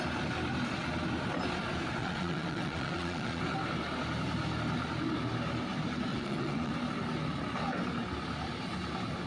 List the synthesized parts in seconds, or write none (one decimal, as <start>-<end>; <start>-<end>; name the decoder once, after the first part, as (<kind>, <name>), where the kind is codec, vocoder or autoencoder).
2.0-3.4 (vocoder, Vocos); 6.1-6.7